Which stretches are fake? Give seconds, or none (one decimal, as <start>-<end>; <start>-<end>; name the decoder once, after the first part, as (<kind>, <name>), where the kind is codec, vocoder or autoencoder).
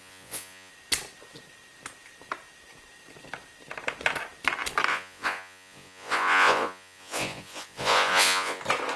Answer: 0.0-0.7 (vocoder, Vocos); 4.9-8.6